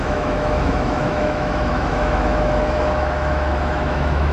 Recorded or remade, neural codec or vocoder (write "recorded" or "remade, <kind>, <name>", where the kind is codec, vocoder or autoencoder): remade, autoencoder, DAC-VAE